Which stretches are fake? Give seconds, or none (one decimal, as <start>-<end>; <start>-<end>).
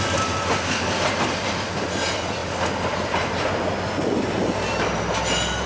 none